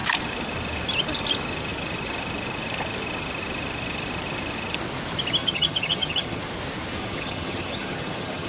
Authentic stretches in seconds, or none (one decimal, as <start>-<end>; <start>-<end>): 0.0-5.4; 6.4-7.0